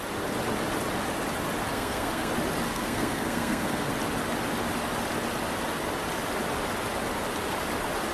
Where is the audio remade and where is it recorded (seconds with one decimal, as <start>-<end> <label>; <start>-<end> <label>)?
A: 0.0-1.7 recorded; 1.7-2.3 remade; 2.3-2.7 recorded; 2.7-3.9 remade; 3.9-8.1 recorded